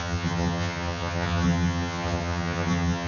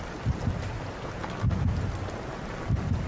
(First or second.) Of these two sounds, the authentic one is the second